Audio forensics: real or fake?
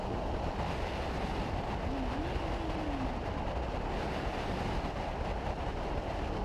real